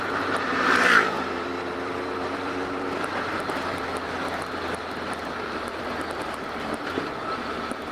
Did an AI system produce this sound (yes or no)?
yes